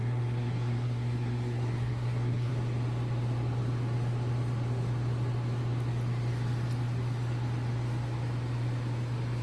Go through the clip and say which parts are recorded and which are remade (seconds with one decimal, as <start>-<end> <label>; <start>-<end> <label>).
0.0-2.5 remade; 2.5-9.4 recorded